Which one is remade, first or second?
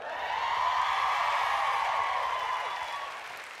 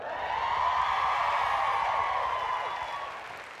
first